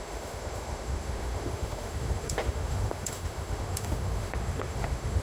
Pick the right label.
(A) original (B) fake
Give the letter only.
B